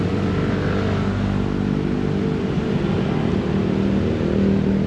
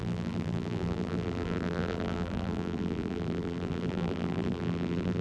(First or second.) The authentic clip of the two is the first